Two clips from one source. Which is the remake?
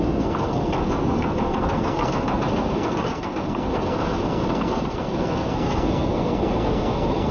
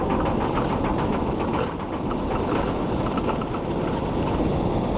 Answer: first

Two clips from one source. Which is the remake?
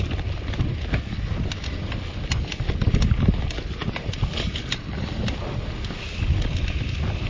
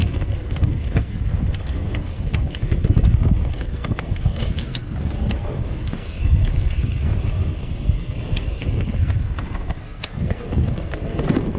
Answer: second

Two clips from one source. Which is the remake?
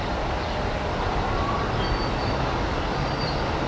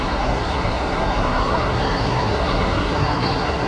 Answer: second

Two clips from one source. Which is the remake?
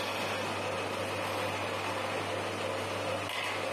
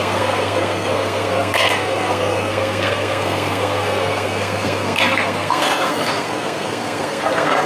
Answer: second